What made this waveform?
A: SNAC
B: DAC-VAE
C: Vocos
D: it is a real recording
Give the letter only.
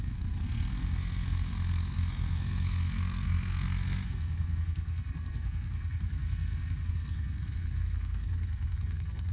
A